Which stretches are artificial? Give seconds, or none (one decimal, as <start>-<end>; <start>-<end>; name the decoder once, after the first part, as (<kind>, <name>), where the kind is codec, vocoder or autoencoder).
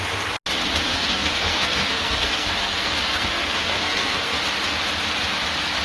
0.9-4.4 (codec, SNAC)